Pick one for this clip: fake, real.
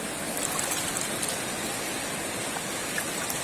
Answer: real